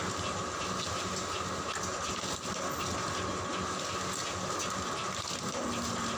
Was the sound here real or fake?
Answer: real